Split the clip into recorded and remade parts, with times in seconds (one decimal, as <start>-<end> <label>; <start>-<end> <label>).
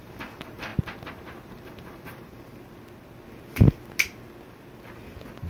0.0-0.7 remade; 0.7-1.5 recorded; 1.5-2.5 remade; 2.5-5.5 recorded